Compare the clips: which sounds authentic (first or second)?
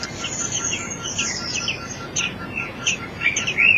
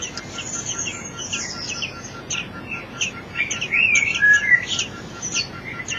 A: second